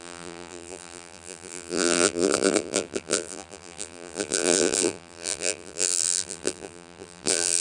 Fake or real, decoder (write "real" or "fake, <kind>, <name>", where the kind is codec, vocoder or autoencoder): fake, vocoder, BigVGAN v2